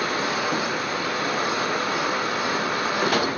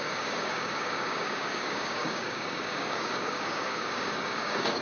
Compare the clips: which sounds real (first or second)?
first